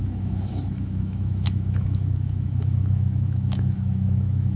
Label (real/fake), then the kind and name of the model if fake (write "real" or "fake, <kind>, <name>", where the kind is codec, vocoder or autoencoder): fake, autoencoder, DAC-VAE